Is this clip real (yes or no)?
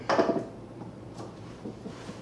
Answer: yes